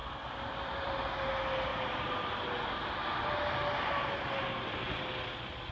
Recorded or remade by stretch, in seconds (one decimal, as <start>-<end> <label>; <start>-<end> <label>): 0.0-1.1 remade; 1.1-5.7 recorded